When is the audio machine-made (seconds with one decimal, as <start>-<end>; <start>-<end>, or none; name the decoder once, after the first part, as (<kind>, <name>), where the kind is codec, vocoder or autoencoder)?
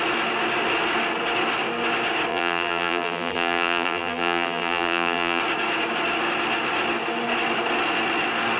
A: 2.3-5.4 (vocoder, BigVGAN v2)